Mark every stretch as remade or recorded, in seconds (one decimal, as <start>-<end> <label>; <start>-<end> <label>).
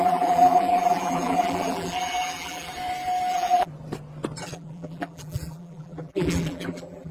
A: 0.0-2.7 remade; 2.7-3.3 recorded; 3.3-3.7 remade; 3.7-4.4 recorded; 4.4-7.1 remade